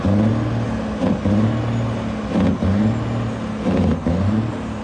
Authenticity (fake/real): real